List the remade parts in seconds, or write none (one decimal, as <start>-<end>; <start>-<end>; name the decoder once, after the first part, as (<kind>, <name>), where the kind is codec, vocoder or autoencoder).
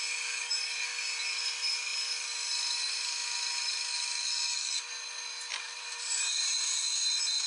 5.5-6.8 (vocoder, BigVGAN v2)